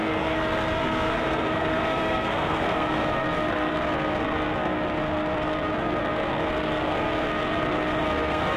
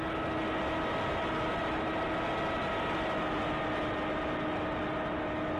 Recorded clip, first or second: second